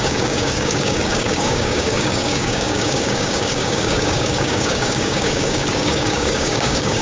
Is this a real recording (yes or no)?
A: no